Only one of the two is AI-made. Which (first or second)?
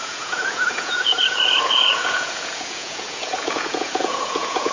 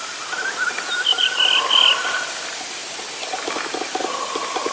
first